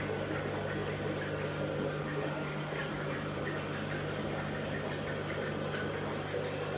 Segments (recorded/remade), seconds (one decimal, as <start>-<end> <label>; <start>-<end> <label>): 0.0-2.8 recorded; 2.8-3.4 remade; 3.4-6.8 recorded